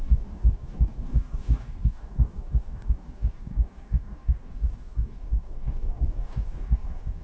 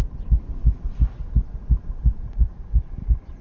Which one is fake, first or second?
first